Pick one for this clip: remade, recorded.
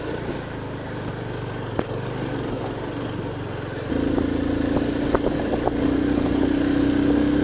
recorded